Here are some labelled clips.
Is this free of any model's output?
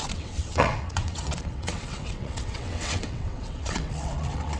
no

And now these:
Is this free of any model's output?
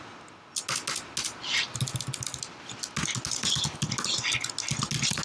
yes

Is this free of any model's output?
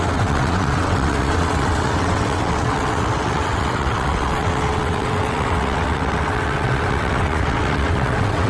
no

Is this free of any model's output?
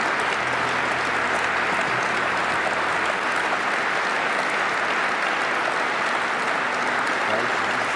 yes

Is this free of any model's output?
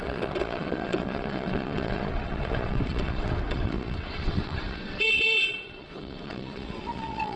no